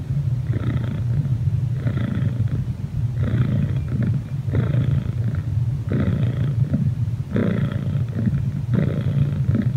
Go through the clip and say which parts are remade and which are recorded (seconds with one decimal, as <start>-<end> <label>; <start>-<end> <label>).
0.0-9.8 recorded